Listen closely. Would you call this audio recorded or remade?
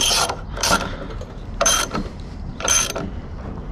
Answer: remade